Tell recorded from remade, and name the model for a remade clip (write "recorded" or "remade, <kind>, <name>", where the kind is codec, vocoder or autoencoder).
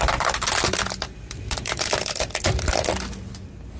recorded